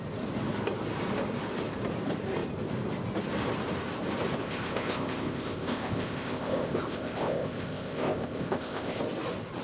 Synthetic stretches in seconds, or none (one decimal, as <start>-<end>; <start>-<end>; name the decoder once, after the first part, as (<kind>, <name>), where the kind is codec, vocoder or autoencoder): 4.4-9.0 (codec, ZipCodec)